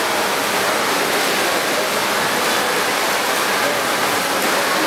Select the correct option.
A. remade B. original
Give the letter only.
B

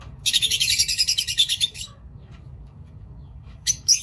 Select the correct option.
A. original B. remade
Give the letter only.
B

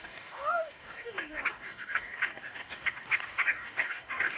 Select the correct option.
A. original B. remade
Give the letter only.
B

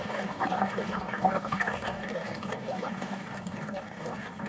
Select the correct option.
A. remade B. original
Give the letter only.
A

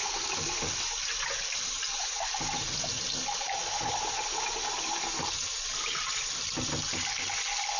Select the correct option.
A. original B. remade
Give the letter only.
A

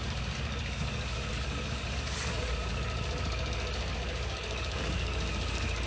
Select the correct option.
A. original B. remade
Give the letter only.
B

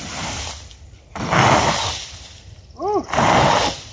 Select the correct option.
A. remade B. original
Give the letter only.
B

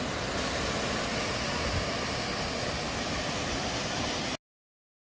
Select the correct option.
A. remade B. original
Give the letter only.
B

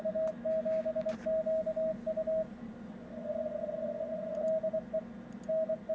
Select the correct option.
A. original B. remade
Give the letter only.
A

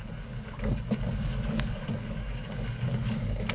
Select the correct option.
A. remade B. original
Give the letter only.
A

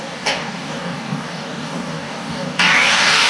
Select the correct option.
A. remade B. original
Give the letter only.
A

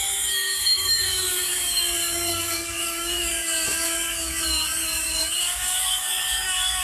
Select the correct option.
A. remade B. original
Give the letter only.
A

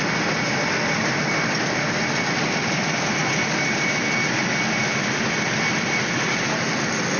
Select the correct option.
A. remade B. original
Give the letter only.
B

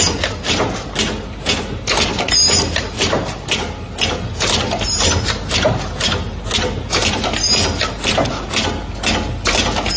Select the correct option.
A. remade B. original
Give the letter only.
B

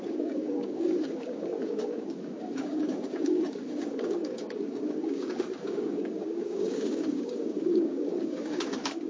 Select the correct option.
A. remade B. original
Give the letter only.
A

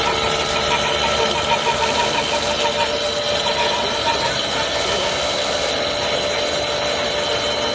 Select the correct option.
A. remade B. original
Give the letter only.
B